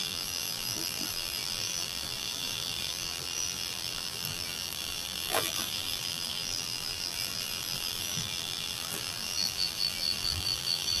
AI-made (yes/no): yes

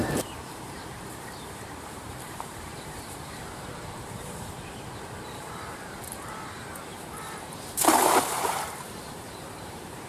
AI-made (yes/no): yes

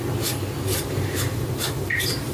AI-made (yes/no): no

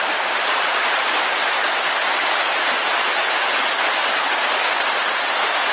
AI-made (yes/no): yes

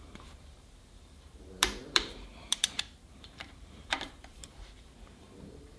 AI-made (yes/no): yes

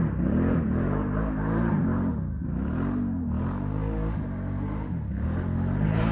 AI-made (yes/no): no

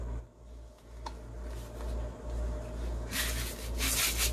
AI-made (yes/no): no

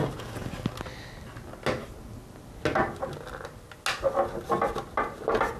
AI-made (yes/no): no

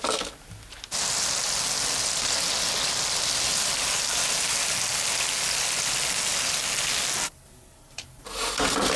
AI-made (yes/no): no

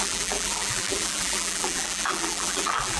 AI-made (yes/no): yes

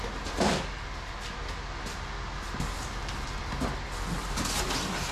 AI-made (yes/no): no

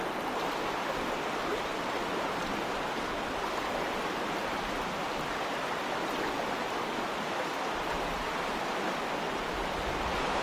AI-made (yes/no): no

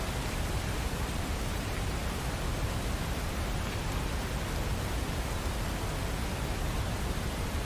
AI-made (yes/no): no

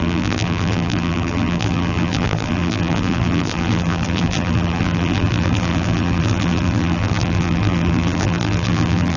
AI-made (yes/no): yes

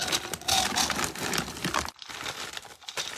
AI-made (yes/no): no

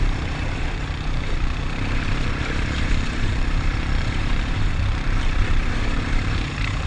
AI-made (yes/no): yes